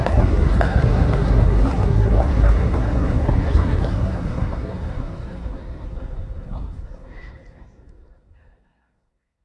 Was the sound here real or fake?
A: fake